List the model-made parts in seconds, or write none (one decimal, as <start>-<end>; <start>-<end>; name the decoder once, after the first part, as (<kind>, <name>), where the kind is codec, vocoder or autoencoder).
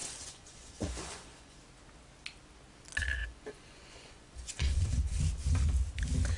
0.0-1.6 (vocoder, Vocos); 3.2-5.2